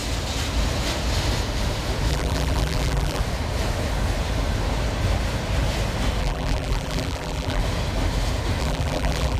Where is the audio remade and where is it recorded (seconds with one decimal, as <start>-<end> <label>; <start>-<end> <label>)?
0.0-2.1 recorded; 2.1-3.2 remade; 3.2-6.2 recorded; 6.2-7.6 remade; 7.6-8.6 recorded; 8.6-9.4 remade